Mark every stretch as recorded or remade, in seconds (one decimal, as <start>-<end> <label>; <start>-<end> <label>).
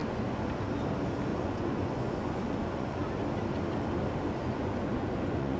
0.0-0.5 remade; 0.5-1.3 recorded; 1.3-3.0 remade; 3.0-4.4 recorded; 4.4-5.6 remade